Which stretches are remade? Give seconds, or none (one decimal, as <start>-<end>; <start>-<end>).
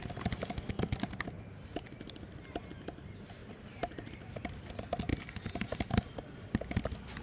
none